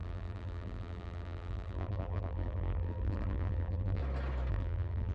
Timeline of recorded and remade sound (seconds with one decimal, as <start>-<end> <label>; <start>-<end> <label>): 0.0-4.0 remade; 4.0-4.5 recorded; 4.5-5.1 remade